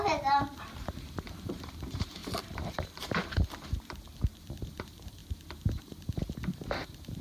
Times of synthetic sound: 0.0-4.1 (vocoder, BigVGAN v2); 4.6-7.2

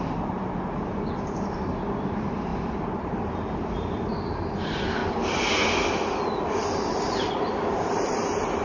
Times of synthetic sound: 0.0-2.5 (vocoder, BigVGAN v2); 3.0-5.0; 7.3-8.6

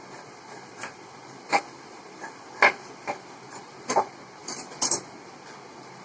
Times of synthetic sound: 0.0-3.6 (vocoder, BigVGAN v2); 4.4-5.4

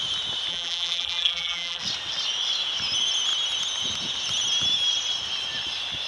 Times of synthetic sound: 0.5-1.8 (vocoder, BigVGAN v2)

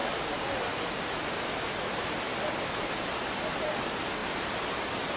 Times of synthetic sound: none

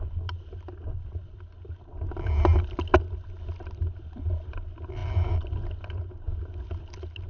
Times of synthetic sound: none

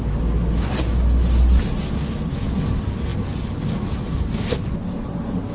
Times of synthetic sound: none